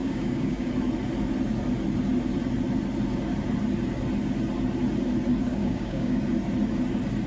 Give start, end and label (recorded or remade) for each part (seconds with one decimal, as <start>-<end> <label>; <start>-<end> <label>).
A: 0.0-0.7 remade; 0.7-5.5 recorded; 5.5-6.2 remade; 6.2-7.3 recorded